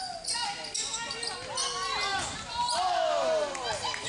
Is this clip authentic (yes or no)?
yes